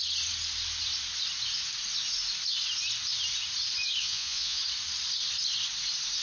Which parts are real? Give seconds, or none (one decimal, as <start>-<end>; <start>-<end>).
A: 0.0-4.0; 4.6-6.2